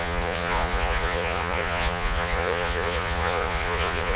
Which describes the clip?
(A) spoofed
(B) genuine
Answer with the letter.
A